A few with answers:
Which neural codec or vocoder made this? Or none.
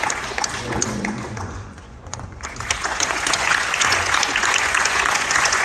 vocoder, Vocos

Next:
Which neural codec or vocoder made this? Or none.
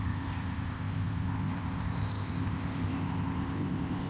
codec, ZipCodec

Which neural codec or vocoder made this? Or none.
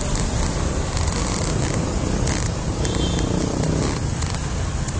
none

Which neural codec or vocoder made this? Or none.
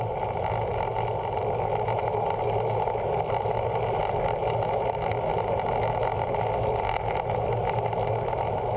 none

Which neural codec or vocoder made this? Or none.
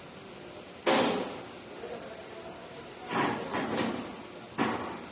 none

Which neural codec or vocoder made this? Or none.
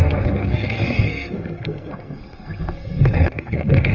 codec, SNAC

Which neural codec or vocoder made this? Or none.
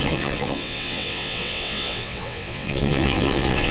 vocoder, WaveNeXt